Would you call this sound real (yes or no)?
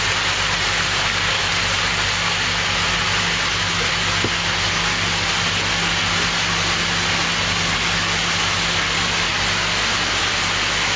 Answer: yes